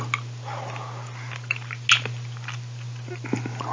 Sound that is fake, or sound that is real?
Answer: real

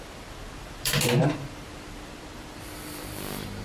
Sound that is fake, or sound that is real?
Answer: fake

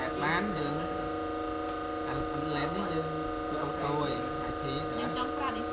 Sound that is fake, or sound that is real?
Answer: real